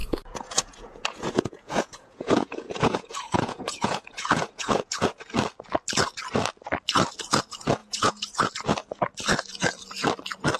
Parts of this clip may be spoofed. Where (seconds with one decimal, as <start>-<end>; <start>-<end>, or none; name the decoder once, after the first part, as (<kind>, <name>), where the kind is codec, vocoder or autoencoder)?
0.0-5.2 (vocoder, Vocos); 7.8-8.5